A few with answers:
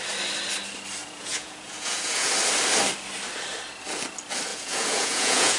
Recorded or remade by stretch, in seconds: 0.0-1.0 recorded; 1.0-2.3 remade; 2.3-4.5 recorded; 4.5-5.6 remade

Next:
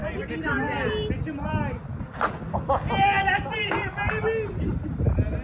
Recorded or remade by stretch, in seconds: 0.0-5.4 recorded

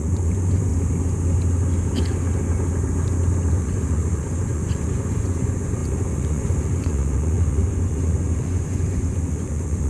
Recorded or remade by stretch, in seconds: 0.0-0.7 remade; 0.7-3.5 recorded; 3.5-9.9 remade

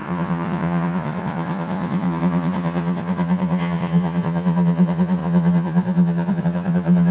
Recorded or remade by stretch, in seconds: 0.0-7.1 remade